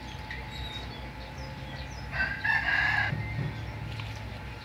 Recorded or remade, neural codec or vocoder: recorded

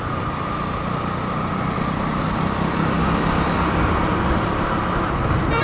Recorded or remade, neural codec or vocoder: recorded